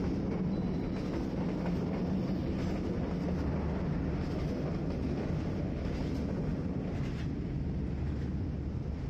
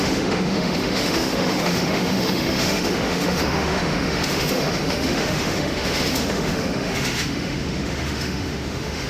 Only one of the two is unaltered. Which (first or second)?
first